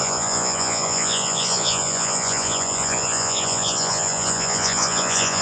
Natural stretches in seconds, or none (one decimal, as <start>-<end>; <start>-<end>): none